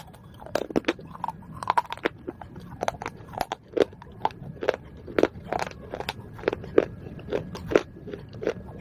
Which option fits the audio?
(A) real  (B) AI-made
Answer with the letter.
A